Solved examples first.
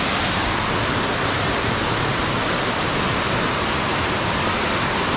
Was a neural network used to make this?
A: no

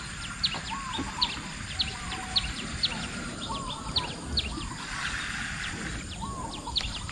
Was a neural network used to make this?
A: no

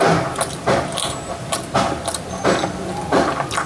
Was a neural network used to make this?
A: no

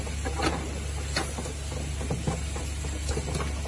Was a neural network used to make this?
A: no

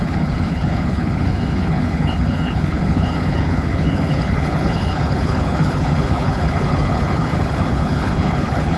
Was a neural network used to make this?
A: yes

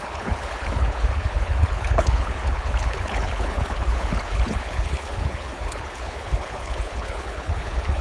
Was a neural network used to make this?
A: yes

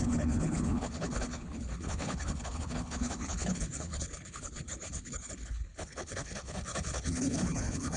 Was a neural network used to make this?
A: yes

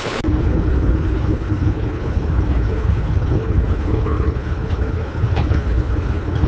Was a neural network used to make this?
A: yes